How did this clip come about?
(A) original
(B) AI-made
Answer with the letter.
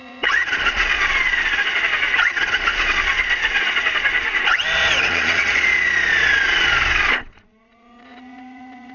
B